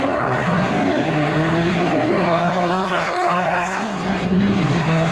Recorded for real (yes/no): no